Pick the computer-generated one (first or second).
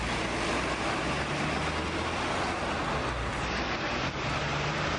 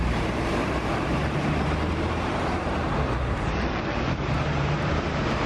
second